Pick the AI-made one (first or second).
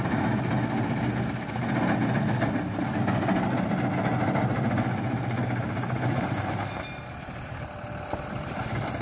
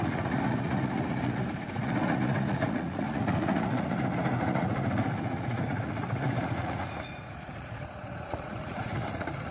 second